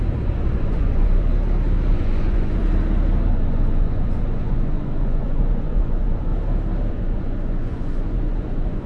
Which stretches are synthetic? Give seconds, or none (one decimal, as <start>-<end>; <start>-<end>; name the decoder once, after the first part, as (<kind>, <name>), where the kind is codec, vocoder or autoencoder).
0.0-1.3 (vocoder, Vocos); 1.9-2.6; 3.3-6.3; 6.9-8.9

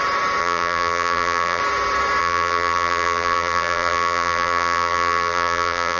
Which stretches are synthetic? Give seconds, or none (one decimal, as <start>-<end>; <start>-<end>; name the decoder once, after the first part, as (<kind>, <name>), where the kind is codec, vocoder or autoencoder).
0.4-1.6 (vocoder, BigVGAN v2); 2.2-6.0

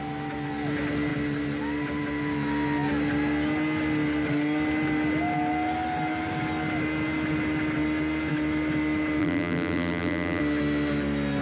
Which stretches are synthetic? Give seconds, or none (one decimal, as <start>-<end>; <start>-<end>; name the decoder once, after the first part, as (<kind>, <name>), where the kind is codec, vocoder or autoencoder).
9.2-10.4 (vocoder, BigVGAN v2)